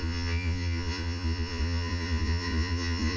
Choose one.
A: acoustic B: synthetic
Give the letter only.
B